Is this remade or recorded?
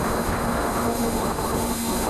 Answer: remade